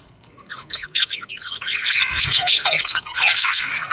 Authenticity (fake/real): fake